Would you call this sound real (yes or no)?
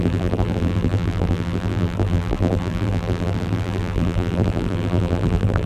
no